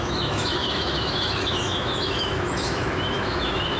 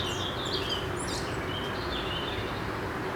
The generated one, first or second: first